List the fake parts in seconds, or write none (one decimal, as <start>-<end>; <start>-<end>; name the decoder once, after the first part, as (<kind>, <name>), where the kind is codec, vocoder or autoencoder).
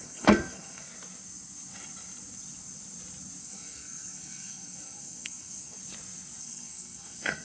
0.0-0.9 (codec, SNAC); 3.4-5.8; 6.4-7.4